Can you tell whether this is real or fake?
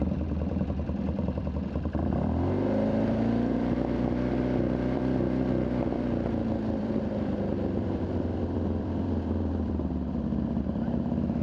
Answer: fake